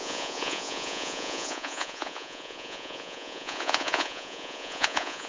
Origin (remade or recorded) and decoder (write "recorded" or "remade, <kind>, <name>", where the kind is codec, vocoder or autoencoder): remade, vocoder, Vocos